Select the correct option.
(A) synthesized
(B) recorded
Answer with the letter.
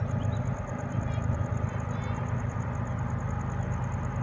B